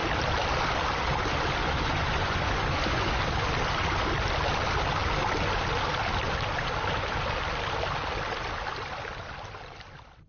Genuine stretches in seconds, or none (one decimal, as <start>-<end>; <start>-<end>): 0.0-1.6; 3.2-10.3

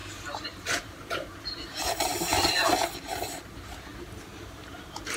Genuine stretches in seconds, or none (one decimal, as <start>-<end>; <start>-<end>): 2.1-3.0

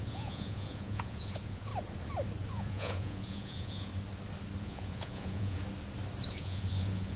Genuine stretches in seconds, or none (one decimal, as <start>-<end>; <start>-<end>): 1.7-2.5; 3.9-4.6; 5.6-6.3

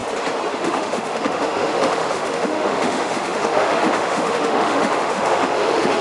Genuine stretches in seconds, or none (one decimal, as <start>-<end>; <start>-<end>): 0.0-0.5

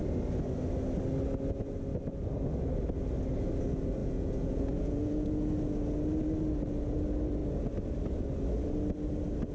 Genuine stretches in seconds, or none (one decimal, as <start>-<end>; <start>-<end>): 0.0-4.0; 5.3-9.5

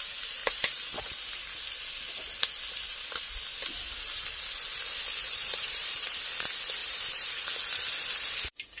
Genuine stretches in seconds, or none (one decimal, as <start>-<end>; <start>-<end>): 0.0-0.4; 1.4-5.2; 6.2-6.8; 7.5-8.8

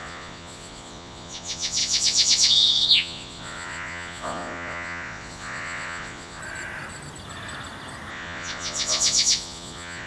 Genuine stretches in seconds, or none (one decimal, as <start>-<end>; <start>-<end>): 6.4-8.1

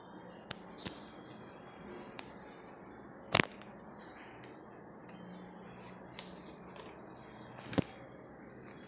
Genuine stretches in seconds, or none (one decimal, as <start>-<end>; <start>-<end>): 0.0-8.9